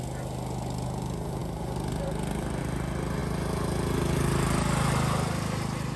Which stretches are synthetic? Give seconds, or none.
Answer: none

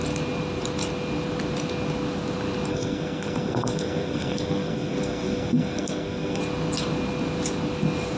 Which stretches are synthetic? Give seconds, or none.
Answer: 2.7-6.4 (codec, SNAC)